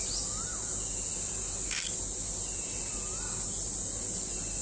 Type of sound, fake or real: real